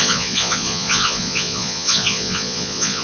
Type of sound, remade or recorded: remade